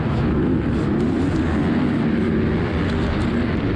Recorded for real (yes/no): yes